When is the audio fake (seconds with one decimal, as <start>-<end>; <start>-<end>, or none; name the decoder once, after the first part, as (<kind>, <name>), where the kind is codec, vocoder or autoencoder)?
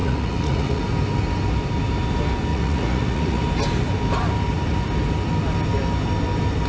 0.0-0.8 (vocoder, Vocos); 2.5-3.4